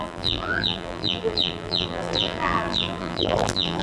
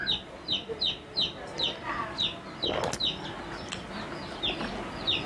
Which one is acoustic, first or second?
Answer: second